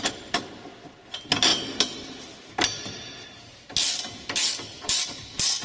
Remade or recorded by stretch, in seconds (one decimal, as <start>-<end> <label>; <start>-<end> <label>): 0.0-5.6 recorded